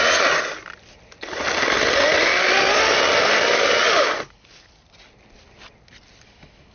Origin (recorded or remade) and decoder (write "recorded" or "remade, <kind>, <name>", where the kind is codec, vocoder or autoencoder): recorded